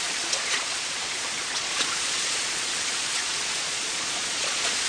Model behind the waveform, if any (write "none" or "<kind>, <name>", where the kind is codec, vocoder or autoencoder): vocoder, Vocos